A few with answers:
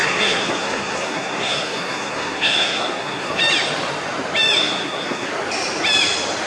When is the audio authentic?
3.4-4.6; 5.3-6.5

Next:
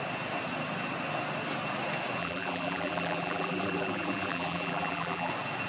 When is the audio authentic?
0.0-2.2; 5.3-5.7

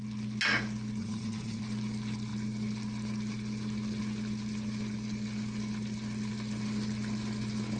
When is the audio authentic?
0.0-1.0; 1.6-7.8

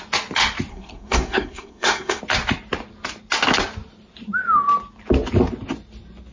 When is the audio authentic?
0.0-0.7; 2.2-6.3